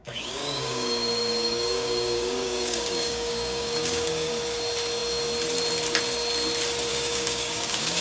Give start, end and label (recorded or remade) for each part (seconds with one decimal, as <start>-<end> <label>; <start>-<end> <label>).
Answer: 0.0-4.3 remade; 4.3-6.9 recorded; 6.9-8.0 remade